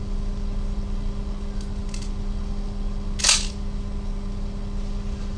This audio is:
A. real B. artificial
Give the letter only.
A